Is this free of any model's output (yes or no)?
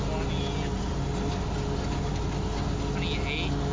yes